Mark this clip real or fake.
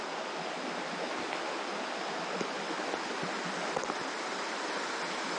real